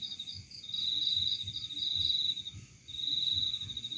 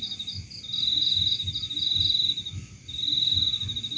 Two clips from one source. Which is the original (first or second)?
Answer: second